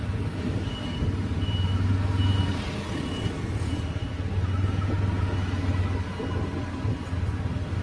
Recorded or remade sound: recorded